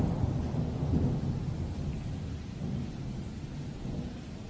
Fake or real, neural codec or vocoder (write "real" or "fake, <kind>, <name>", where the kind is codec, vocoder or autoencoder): real